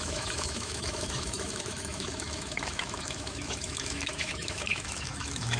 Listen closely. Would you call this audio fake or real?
fake